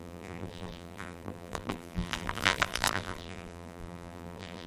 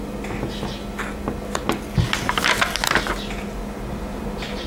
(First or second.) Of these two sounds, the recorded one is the second